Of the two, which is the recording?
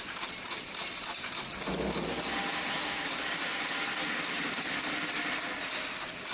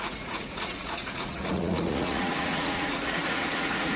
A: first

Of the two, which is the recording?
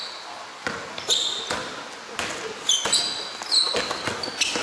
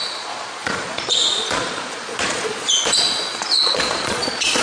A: first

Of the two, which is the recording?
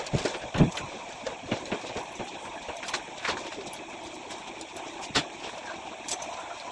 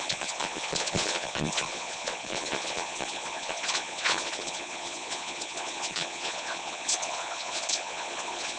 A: first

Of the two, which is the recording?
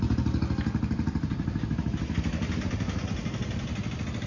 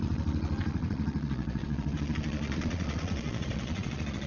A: first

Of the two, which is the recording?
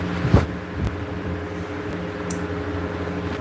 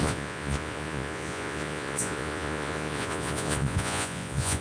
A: first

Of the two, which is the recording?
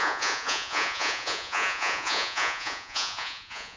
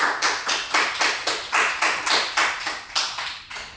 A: second